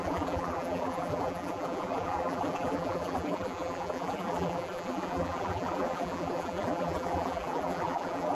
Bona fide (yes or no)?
no